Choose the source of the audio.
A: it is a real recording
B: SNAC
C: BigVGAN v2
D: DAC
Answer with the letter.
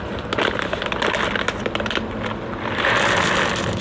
A